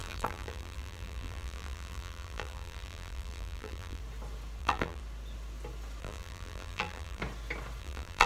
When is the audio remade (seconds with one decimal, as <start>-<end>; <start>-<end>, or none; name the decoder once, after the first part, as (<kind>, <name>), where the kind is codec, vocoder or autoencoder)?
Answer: 0.0-4.0 (vocoder, BigVGAN v2); 4.6-5.0; 6.0-7.2; 7.8-8.3